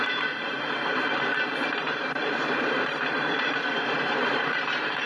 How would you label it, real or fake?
fake